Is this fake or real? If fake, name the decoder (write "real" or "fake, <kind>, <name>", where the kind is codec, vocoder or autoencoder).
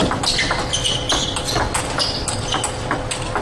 real